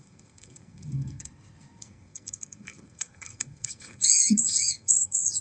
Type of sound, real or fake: fake